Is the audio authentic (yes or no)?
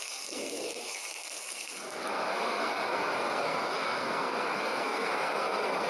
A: no